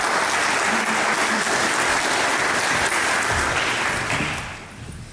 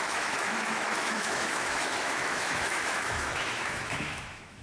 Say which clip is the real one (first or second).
first